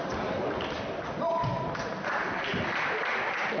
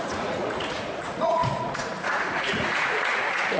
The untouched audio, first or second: first